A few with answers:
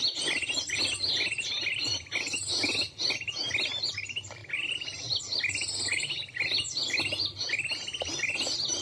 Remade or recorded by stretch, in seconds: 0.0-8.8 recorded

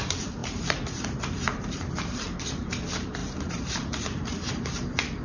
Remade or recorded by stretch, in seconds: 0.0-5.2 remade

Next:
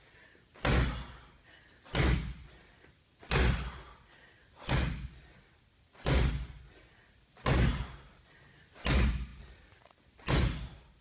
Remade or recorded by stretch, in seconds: 0.0-11.0 recorded